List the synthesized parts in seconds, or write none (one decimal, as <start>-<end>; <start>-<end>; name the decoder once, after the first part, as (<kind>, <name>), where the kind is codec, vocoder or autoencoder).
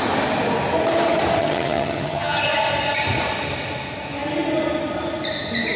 1.4-2.4 (vocoder, HiFi-GAN)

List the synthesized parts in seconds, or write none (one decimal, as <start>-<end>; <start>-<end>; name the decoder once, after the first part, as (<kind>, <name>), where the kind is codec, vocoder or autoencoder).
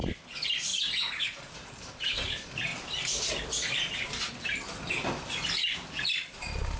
0.0-0.7 (vocoder, BigVGAN v2); 1.2-2.7; 3.3-6.8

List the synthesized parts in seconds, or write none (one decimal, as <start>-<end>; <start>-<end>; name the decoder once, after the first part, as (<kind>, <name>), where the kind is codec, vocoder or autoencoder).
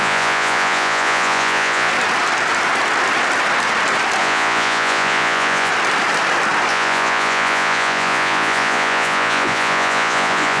0.0-1.9 (vocoder, Vocos); 4.2-5.7; 6.7-10.6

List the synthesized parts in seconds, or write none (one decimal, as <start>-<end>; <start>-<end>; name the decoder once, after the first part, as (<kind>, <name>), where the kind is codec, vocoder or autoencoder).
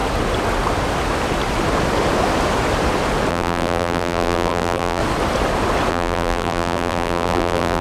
3.3-5.0 (vocoder, BigVGAN v2); 5.9-7.8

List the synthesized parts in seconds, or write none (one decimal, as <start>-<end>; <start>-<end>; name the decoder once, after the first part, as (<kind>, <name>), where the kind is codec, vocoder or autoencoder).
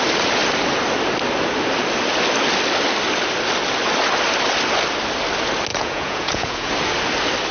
5.7-6.7 (vocoder, Vocos)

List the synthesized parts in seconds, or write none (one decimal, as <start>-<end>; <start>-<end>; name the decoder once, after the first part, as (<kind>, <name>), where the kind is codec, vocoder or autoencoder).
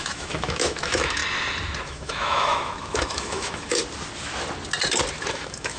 0.0-1.2 (autoencoder, DAC-VAE); 1.8-3.8; 5.3-5.8